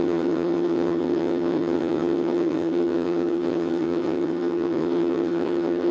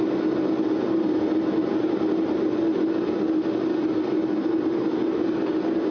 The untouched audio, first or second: second